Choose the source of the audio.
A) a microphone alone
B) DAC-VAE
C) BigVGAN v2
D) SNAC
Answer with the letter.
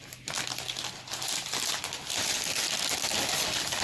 A